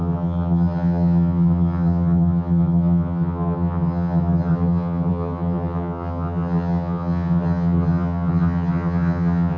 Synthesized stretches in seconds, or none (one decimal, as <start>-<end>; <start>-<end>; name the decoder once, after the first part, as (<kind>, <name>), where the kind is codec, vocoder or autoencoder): 0.0-9.6 (vocoder, HiFi-GAN)